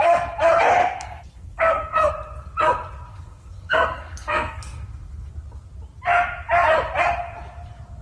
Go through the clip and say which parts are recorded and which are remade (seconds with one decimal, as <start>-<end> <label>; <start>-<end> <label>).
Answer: 0.0-0.8 recorded; 0.8-2.1 remade; 2.1-3.1 recorded; 3.1-5.3 remade; 5.3-8.0 recorded